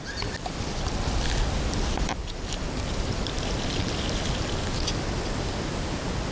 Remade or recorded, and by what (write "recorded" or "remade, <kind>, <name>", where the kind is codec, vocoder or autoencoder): recorded